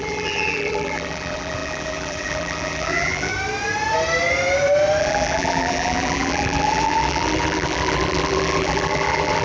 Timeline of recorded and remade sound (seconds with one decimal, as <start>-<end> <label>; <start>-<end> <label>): 0.0-3.3 remade; 3.3-5.0 recorded; 5.0-9.4 remade